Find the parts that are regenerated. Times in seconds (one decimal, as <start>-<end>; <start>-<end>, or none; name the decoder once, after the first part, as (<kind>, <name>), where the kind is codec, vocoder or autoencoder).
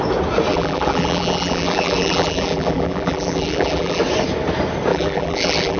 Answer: 0.5-4.0 (vocoder, BigVGAN v2); 4.9-5.8